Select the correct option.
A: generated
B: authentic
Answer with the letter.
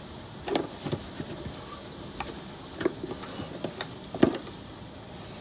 B